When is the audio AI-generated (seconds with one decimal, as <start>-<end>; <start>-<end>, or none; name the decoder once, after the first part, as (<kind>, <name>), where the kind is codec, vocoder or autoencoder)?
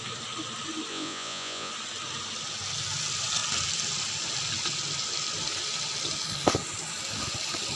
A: 0.9-1.7 (vocoder, Vocos)